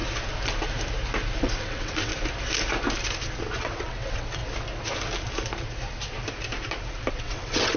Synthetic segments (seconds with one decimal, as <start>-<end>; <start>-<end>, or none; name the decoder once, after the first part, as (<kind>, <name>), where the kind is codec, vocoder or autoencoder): 1.3-2.1 (vocoder, WaveNeXt); 3.6-4.4; 7.1-7.8